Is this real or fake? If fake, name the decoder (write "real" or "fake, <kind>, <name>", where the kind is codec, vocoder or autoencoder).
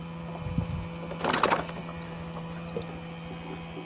real